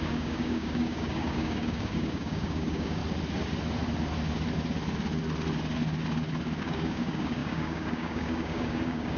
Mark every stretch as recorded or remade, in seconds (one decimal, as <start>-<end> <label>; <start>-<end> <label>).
0.0-3.0 remade; 3.0-6.6 recorded; 6.6-9.2 remade